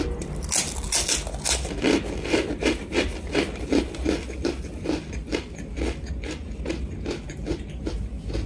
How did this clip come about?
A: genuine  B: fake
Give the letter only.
A